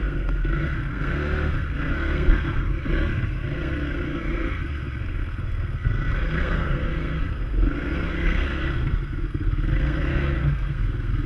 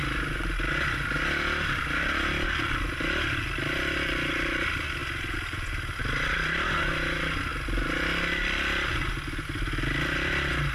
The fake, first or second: first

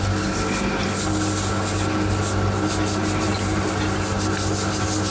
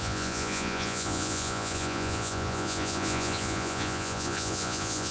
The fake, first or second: second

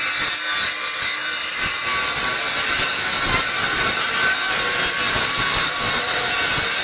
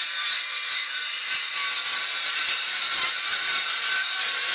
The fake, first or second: second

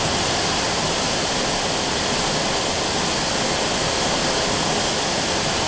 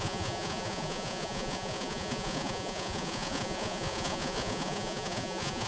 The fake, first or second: second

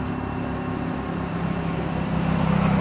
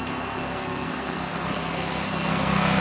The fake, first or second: second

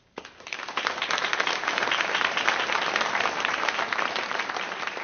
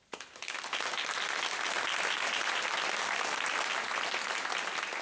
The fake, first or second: first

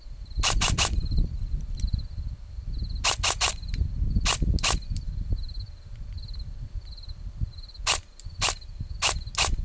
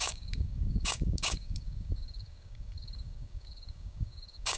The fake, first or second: second